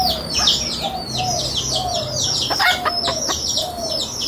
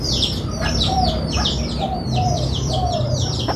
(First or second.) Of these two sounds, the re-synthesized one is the second